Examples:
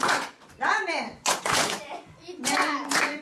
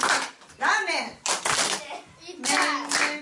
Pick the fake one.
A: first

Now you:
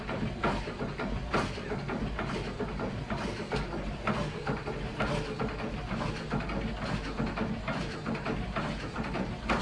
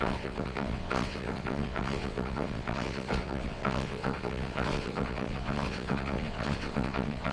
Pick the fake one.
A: second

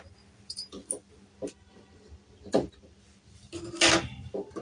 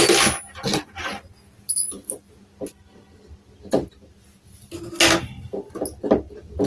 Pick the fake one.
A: first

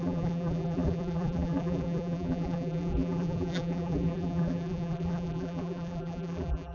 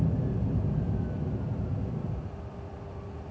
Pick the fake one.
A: first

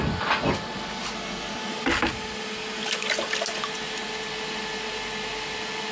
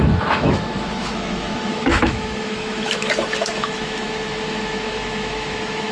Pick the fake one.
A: second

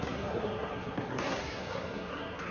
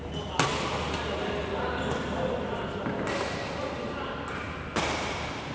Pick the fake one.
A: first